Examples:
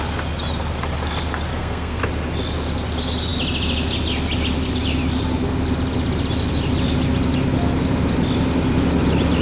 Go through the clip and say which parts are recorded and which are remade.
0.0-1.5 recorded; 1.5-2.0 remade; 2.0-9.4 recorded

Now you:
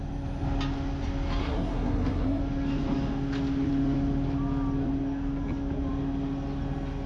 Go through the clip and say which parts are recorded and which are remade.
0.0-1.4 recorded; 1.4-2.4 remade; 2.4-7.1 recorded

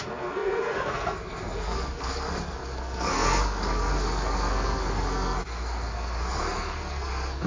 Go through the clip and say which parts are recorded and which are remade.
0.0-7.5 remade

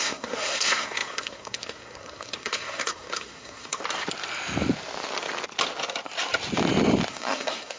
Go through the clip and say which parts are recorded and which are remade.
0.0-3.8 remade; 3.8-7.1 recorded; 7.1-7.8 remade